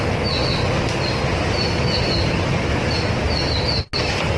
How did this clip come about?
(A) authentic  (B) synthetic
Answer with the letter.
A